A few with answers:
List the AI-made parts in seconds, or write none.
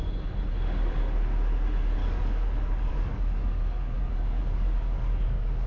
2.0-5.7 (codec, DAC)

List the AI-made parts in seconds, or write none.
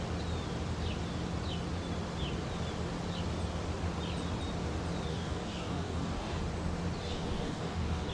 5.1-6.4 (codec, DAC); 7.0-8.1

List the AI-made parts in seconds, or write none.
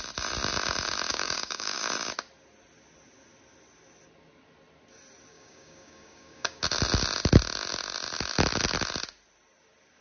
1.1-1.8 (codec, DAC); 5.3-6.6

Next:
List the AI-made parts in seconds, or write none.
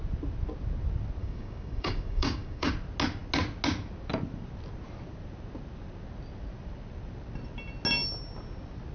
1.2-2.7 (codec, DAC)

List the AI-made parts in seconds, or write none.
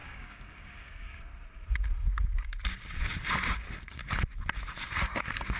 0.0-1.3 (codec, DAC); 3.5-4.0; 5.0-5.6